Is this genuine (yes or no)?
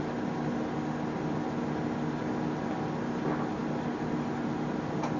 yes